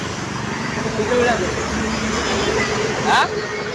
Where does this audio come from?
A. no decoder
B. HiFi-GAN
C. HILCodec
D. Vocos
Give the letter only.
A